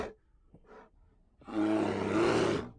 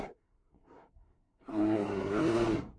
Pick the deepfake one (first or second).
second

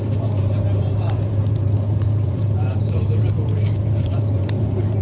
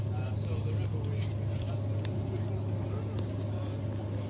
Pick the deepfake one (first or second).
first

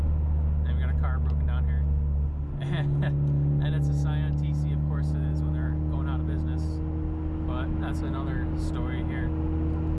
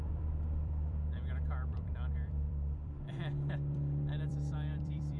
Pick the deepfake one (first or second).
second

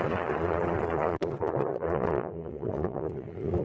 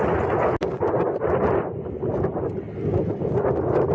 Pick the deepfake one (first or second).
first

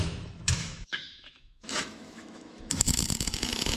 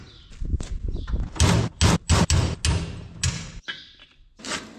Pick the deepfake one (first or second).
first